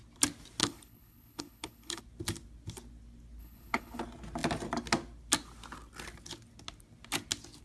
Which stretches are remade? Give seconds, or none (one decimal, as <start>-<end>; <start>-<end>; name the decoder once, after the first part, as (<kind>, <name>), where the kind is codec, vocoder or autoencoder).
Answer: 0.6-2.0 (codec, HILCodec); 3.4-4.0